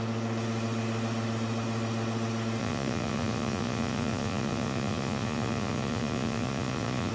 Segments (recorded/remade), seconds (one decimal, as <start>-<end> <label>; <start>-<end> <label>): 0.0-2.6 recorded; 2.6-7.1 remade